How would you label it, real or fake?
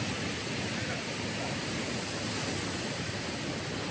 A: real